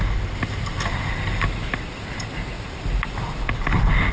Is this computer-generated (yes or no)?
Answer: no